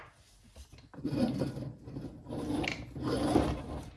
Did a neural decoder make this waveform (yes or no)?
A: no